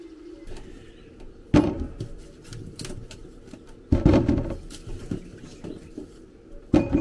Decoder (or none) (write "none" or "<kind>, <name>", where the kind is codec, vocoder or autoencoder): none